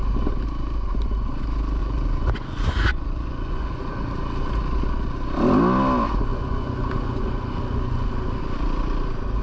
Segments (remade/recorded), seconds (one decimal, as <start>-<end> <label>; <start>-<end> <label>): 0.0-1.8 recorded; 1.8-4.0 remade; 4.0-6.3 recorded; 6.3-8.1 remade; 8.1-9.4 recorded